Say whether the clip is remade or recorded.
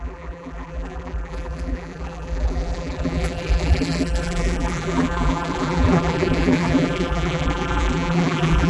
remade